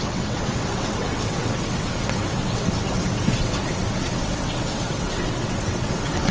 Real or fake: fake